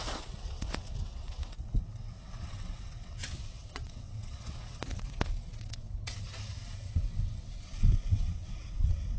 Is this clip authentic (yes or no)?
no